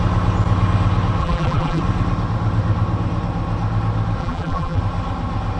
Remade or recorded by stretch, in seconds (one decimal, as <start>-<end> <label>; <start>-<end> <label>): 0.0-1.2 recorded; 1.2-1.8 remade; 1.8-4.2 recorded; 4.2-4.8 remade; 4.8-5.6 recorded